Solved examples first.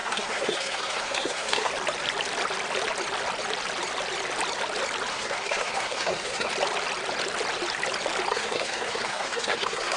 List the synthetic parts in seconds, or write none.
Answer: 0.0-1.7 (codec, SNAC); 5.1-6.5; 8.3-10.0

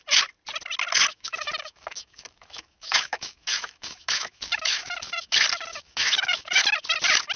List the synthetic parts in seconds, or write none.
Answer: 1.1-5.3 (autoencoder, DAC-VAE); 5.7-6.6

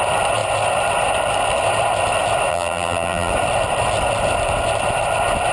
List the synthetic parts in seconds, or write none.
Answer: 2.5-3.3 (vocoder, BigVGAN v2)

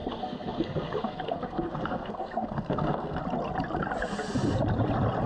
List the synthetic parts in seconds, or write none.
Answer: 0.0-3.2 (codec, SNAC)